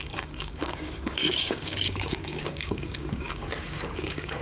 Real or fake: fake